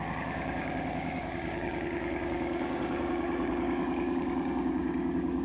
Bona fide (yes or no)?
no